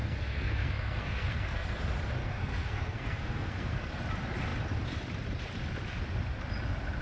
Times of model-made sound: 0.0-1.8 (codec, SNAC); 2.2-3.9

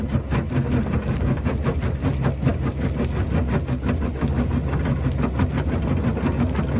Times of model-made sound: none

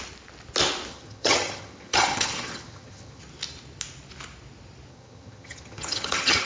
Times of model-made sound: 0.9-3.2 (vocoder, HiFi-GAN); 4.9-6.5

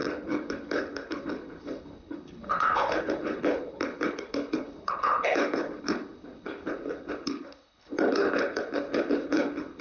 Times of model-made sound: 0.0-9.8 (codec, HILCodec)

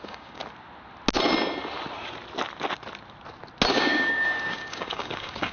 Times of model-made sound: 0.0-0.4 (codec, DAC); 3.7-5.5

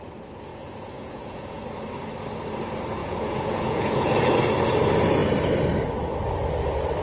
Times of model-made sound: 0.5-1.6 (vocoder, Vocos); 3.0-4.3

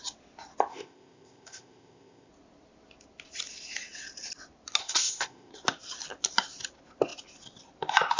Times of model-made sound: 0.7-2.3 (codec, ZipCodec); 4.8-5.5